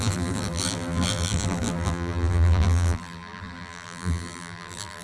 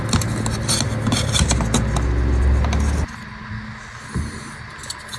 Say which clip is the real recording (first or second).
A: second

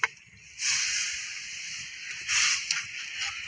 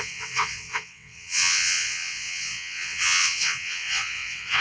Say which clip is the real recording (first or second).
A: first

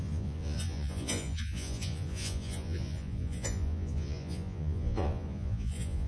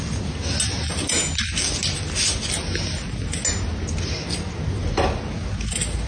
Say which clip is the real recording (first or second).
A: second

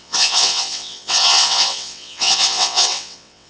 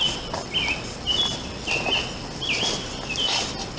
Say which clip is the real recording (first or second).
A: second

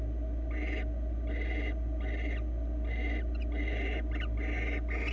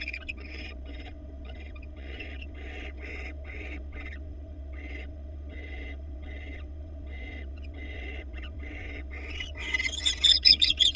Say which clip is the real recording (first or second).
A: first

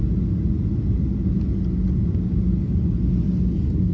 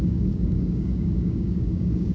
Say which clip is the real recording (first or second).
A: first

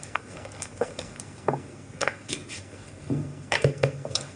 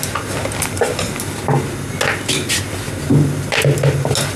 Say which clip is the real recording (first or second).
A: second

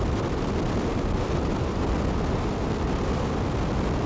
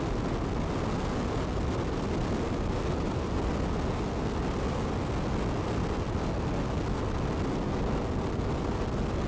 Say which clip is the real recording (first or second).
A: second